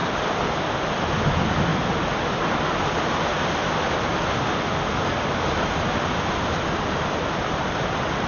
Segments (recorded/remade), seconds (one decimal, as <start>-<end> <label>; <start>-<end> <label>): 0.0-8.3 recorded